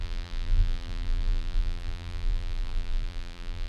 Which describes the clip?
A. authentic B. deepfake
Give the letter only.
B